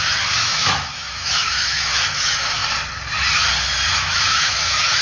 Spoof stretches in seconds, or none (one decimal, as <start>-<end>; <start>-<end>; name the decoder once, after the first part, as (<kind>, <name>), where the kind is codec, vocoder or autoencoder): 0.0-2.6 (autoencoder, DAC-VAE); 3.9-5.0